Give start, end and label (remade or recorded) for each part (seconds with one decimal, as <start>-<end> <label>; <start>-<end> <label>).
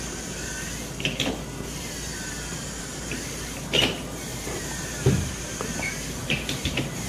0.0-4.3 recorded; 4.3-7.1 remade